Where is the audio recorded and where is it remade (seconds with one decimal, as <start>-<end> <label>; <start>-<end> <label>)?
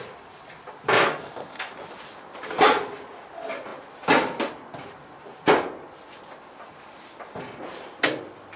0.0-1.1 recorded; 1.1-1.7 remade; 1.7-8.6 recorded